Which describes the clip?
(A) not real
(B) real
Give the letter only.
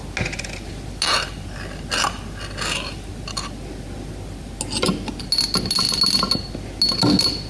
B